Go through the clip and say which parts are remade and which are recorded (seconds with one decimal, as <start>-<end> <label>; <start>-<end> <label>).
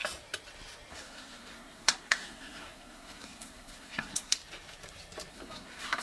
0.0-0.9 recorded; 0.9-4.4 remade; 4.4-5.3 recorded; 5.3-6.0 remade